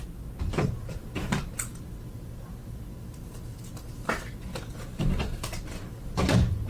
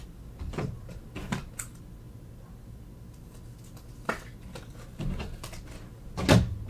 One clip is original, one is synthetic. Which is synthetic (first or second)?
first